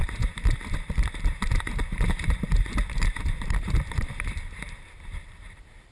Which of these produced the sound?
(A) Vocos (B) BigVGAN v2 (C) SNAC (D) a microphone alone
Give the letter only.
B